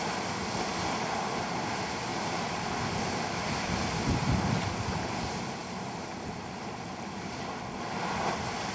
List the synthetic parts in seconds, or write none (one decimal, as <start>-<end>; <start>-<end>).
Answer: none